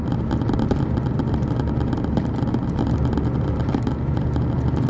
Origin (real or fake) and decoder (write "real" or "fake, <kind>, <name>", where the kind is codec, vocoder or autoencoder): real